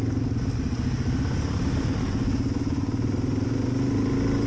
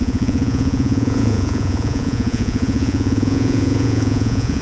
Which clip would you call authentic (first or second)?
first